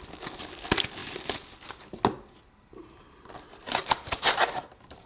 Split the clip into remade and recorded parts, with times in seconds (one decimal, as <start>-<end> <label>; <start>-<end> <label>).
0.0-5.1 recorded